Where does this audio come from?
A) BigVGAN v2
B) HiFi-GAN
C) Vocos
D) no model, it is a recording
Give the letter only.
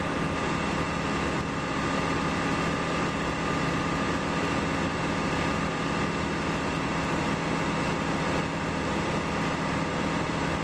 D